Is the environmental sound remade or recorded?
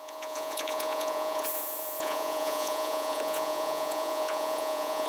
remade